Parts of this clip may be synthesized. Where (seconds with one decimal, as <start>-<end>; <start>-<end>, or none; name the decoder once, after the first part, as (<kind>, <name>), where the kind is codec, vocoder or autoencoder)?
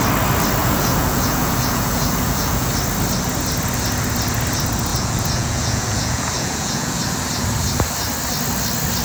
0.6-2.7 (vocoder, Vocos); 4.9-7.0